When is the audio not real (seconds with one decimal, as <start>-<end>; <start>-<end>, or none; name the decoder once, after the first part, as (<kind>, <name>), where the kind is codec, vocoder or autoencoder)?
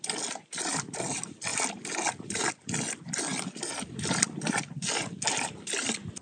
none